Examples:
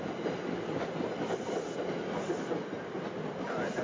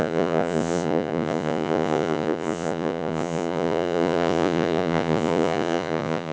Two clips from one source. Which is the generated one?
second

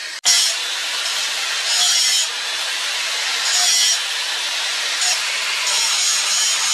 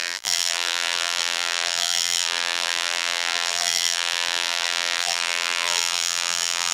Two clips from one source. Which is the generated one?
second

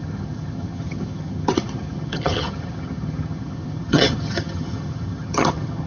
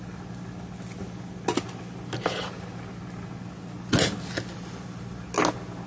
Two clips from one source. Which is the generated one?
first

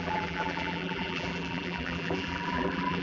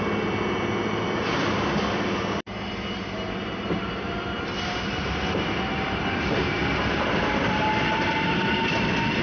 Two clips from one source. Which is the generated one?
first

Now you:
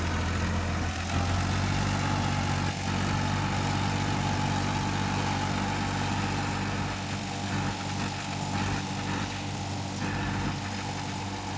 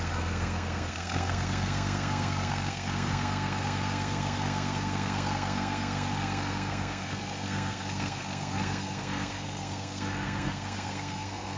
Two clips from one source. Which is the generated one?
second